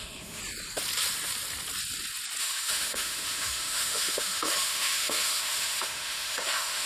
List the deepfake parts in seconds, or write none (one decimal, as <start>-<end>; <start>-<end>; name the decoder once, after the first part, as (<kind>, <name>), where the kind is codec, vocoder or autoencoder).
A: 0.0-0.4 (autoencoder, DAC-VAE); 2.4-6.9